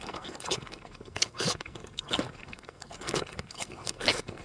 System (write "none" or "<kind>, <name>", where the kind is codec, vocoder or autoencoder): codec, SNAC